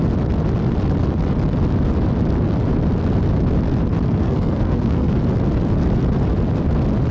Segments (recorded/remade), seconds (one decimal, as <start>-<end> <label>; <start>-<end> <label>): 0.0-4.2 recorded; 4.2-5.2 remade; 5.2-7.1 recorded